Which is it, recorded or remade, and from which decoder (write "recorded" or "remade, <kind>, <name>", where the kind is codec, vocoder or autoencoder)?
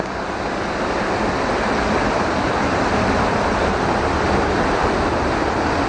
recorded